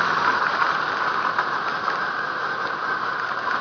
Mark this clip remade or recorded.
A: recorded